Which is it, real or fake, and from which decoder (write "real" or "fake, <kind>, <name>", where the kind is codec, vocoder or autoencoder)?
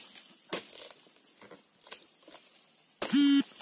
real